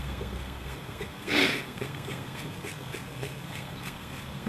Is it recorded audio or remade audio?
remade